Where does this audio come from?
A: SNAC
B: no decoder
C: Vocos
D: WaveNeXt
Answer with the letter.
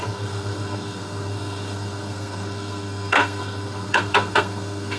A